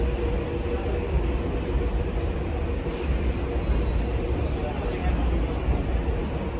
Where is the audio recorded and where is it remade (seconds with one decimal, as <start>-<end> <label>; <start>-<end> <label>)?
0.0-6.6 recorded